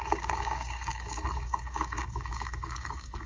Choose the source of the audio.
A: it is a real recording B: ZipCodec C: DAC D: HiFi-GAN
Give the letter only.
C